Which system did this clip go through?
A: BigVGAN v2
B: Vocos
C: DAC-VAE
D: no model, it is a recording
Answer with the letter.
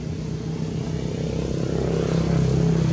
D